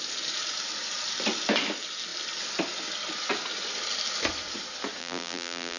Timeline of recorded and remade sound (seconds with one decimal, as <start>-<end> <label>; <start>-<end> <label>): 0.0-5.0 recorded; 5.0-5.8 remade